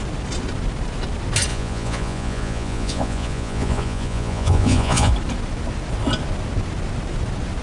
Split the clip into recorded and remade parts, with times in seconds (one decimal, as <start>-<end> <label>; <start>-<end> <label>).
0.0-1.5 recorded; 1.5-5.1 remade; 5.1-7.6 recorded